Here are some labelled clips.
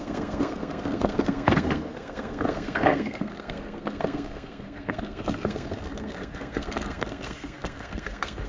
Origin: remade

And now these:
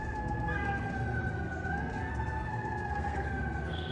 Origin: remade